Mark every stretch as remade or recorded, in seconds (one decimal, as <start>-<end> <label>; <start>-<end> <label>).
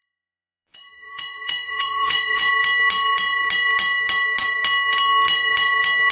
0.0-2.5 remade; 2.5-6.1 recorded